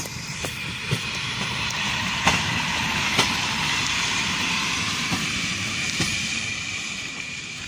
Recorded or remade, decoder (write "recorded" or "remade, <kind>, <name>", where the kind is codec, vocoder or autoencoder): remade, vocoder, BigVGAN v2